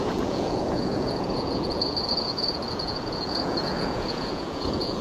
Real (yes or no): no